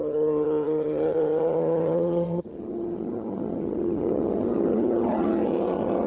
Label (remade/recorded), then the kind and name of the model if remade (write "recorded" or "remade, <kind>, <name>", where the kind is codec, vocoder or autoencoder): remade, vocoder, HiFi-GAN